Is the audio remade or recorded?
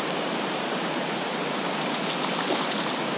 recorded